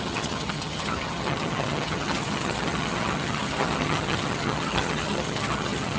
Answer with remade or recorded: remade